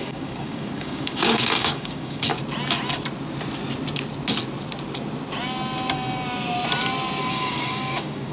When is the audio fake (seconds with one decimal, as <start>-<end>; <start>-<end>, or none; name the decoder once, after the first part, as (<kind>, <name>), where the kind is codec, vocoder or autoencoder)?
0.0-2.3 (codec, DAC); 7.3-8.3